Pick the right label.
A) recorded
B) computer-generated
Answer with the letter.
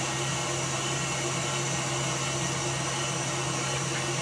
A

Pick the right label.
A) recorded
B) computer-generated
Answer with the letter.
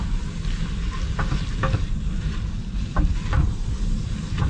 A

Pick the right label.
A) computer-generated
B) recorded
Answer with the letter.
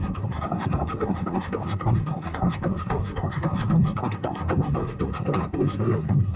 A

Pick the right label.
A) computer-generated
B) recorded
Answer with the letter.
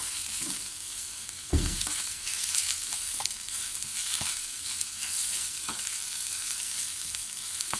A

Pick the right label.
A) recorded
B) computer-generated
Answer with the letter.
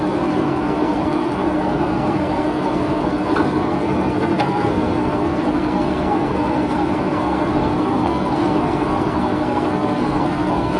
B